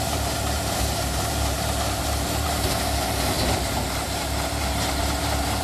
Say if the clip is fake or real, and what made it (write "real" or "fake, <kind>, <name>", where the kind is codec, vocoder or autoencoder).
fake, vocoder, BigVGAN v2